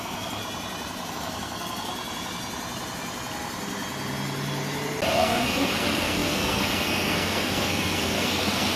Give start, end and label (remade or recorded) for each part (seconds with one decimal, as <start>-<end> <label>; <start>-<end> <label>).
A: 0.0-0.4 remade; 0.4-1.1 recorded; 1.1-1.9 remade; 1.9-5.1 recorded; 5.1-8.8 remade